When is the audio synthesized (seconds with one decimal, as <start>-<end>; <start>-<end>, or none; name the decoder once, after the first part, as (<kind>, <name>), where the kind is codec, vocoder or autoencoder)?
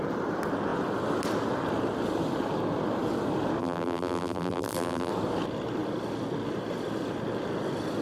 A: 3.6-5.1 (vocoder, BigVGAN v2)